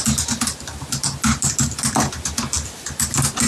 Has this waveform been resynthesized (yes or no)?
no